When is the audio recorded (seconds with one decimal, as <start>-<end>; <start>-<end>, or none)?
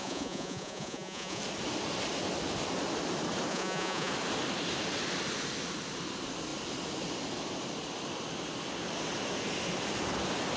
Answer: 1.4-3.5; 4.1-10.6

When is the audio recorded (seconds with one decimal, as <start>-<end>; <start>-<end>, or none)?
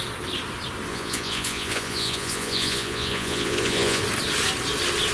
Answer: 0.0-0.9; 4.0-5.1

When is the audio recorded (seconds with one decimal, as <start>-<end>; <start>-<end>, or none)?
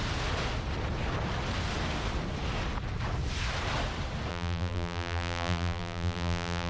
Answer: 0.0-4.3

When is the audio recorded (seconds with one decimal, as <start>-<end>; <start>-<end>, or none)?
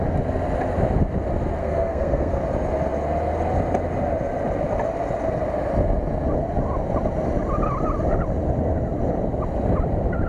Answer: 0.0-1.6; 2.4-10.3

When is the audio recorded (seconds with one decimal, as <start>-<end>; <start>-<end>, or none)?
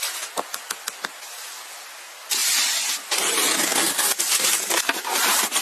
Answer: 0.0-5.6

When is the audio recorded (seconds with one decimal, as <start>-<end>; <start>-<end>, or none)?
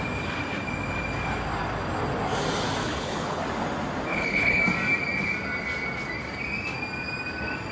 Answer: 0.0-2.8; 3.4-4.1; 4.6-7.7